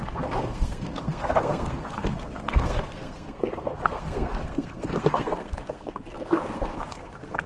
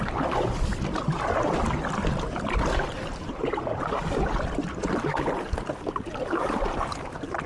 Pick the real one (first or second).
second